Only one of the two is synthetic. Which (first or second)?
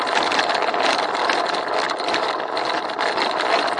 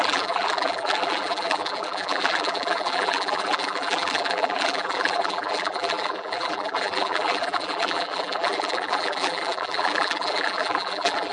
second